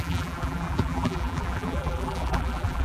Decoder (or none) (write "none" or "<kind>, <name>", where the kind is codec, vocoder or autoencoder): vocoder, BigVGAN v2